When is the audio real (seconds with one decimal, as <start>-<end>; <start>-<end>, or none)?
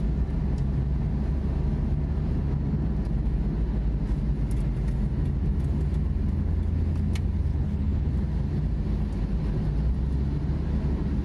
0.0-7.5; 8.1-11.2